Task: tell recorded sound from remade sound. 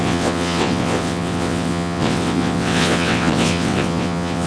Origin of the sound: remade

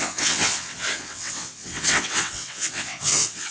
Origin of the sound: remade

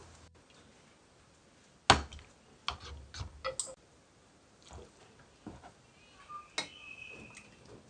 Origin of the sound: recorded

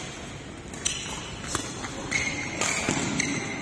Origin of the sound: recorded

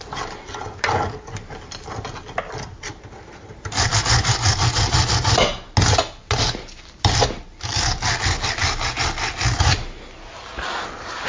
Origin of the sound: recorded